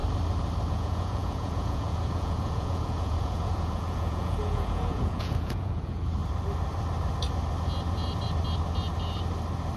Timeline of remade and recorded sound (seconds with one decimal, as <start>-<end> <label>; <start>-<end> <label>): 0.0-0.7 recorded; 0.7-6.2 remade; 6.2-9.8 recorded